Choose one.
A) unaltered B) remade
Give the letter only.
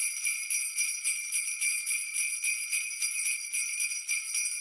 A